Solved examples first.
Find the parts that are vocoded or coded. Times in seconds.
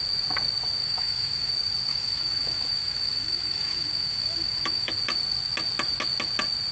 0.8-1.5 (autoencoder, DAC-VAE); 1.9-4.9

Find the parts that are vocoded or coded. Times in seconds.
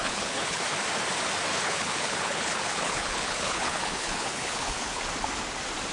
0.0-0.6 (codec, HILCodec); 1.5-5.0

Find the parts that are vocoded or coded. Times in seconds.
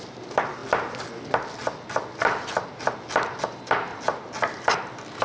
0.0-0.6 (vocoder, BigVGAN v2); 3.4-3.9